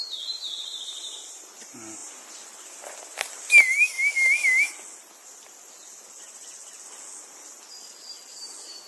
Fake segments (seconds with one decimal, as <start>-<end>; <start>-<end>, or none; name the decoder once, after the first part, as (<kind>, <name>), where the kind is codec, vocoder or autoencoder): none